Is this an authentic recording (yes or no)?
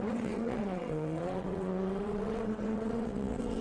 no